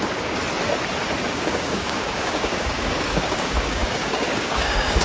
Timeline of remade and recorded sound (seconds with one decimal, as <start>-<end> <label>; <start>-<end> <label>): 0.0-0.4 remade; 0.4-1.3 recorded; 1.3-5.0 remade